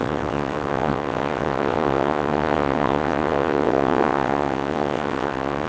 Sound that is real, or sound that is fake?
fake